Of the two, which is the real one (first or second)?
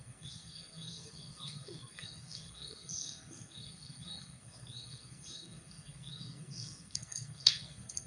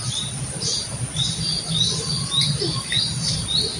second